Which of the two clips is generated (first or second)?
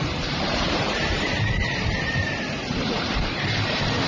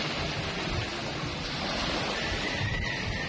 first